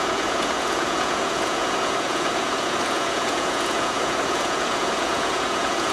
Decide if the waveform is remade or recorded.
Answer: remade